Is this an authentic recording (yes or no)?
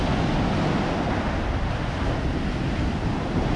yes